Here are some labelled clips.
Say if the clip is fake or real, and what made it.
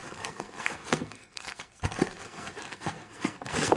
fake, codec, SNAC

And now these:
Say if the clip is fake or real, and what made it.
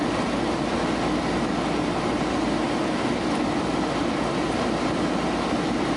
real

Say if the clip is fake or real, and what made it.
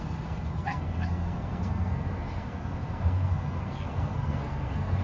fake, codec, SNAC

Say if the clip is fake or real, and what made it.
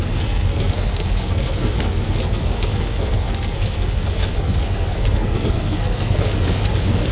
fake, codec, SNAC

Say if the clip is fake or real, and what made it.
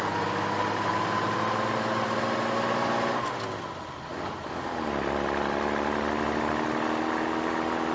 real